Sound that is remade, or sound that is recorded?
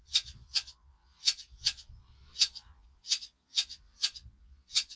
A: remade